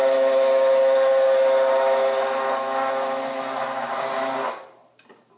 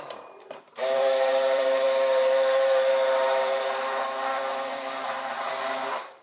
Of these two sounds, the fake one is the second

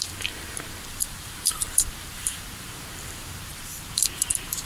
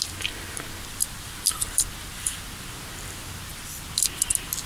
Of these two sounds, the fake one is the first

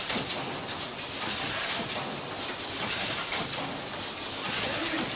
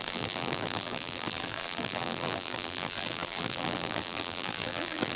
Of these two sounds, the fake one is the second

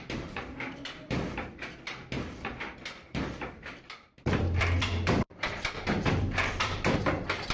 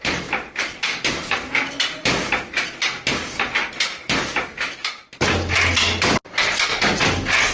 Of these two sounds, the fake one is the first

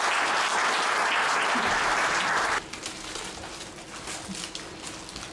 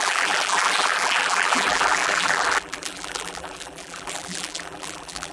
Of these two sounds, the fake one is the second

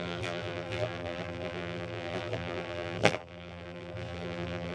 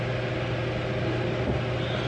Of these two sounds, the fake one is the first